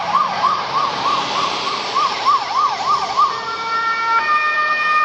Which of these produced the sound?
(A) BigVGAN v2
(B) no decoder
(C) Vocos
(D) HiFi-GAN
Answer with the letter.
A